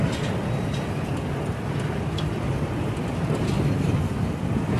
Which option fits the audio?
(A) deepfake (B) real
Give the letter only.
B